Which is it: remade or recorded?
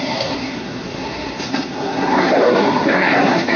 remade